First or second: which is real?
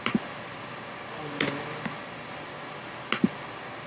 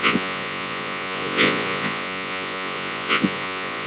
first